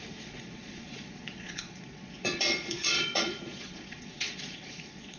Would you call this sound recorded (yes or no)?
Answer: no